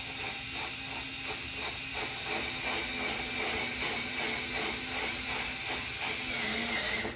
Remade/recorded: recorded